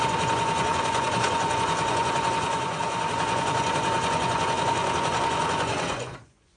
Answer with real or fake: fake